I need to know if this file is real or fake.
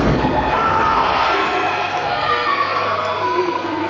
fake